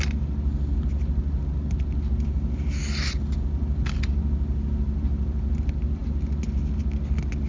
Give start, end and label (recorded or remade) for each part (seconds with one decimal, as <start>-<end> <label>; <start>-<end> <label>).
0.0-7.5 recorded